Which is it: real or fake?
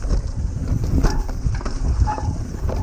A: fake